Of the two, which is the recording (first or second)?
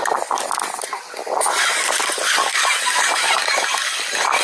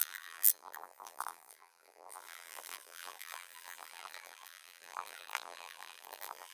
first